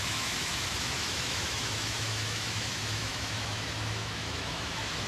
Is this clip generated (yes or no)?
yes